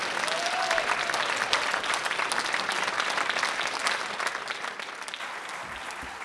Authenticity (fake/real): real